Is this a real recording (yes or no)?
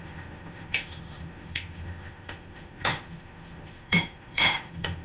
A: no